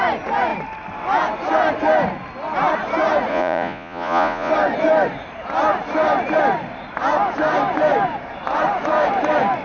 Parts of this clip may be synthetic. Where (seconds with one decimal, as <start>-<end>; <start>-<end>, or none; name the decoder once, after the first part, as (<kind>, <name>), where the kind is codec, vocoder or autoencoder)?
3.3-4.5 (vocoder, Vocos)

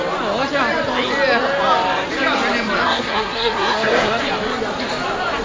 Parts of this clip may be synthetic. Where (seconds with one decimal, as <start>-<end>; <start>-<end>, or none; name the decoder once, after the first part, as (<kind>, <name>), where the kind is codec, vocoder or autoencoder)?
2.8-4.2 (codec, SNAC)

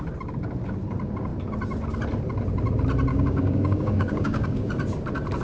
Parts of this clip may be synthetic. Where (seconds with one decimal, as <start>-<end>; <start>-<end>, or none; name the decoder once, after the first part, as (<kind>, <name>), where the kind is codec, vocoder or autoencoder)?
3.1-4.7 (codec, DAC)